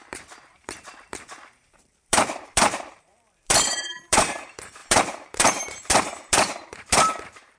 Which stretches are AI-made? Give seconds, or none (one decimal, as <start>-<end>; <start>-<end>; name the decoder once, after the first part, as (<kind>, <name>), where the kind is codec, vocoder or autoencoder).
0.0-7.6 (vocoder, BigVGAN v2)

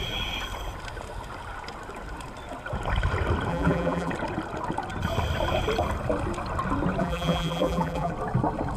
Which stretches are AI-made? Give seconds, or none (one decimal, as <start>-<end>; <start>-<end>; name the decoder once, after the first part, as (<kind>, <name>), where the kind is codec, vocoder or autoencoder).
3.5-4.1 (vocoder, BigVGAN v2); 7.0-8.1

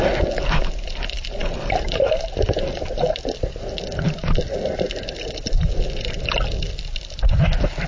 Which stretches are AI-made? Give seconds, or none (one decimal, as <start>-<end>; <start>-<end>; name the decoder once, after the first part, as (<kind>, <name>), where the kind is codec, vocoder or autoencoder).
1.4-2.2 (vocoder, BigVGAN v2)

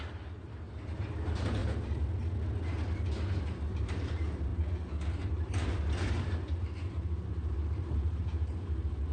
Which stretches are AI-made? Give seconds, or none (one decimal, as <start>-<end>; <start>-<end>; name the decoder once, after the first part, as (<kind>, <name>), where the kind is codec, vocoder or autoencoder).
0.0-1.6 (vocoder, BigVGAN v2); 3.4-4.5; 5.3-9.1

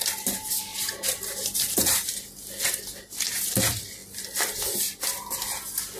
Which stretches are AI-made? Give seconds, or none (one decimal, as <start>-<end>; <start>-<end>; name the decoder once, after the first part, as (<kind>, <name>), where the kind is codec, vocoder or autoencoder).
0.7-2.3 (vocoder, BigVGAN v2)